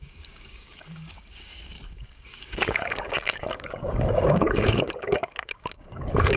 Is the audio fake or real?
fake